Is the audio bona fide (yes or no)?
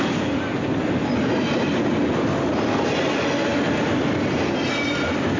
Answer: yes